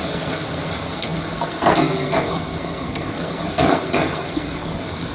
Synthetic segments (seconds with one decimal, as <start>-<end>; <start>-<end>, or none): 0.0-5.1